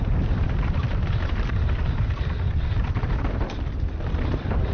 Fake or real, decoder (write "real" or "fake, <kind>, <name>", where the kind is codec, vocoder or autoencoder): fake, vocoder, BigVGAN v2